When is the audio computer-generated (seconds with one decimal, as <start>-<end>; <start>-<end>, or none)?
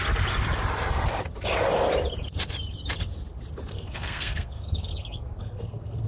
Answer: 3.7-6.1